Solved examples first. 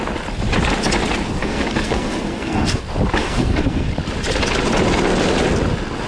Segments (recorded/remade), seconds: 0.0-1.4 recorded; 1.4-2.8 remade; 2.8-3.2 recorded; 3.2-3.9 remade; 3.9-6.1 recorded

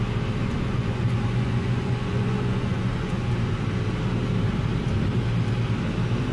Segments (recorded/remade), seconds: 0.0-0.4 recorded; 0.4-3.3 remade; 3.3-6.3 recorded

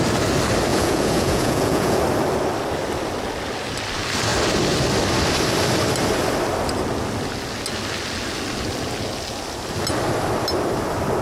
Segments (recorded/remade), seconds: 0.0-0.7 recorded; 0.7-2.0 remade; 2.0-11.2 recorded

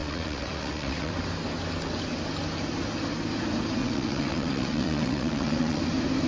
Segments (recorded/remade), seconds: 0.0-1.1 remade; 1.1-3.8 recorded; 3.8-5.8 remade; 5.8-6.3 recorded

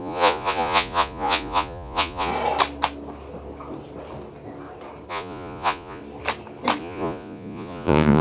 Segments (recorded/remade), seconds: 0.0-2.3 remade; 2.3-5.1 recorded; 5.1-6.0 remade; 6.0-6.8 recorded; 6.8-8.2 remade

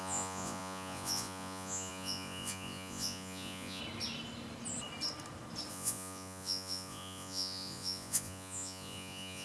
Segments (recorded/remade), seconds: 0.0-3.8 remade; 3.8-5.7 recorded; 5.7-9.4 remade

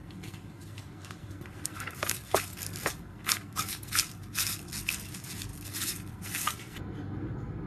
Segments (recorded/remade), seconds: 0.0-7.7 remade

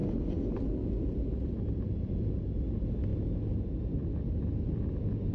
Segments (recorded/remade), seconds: 0.0-5.3 recorded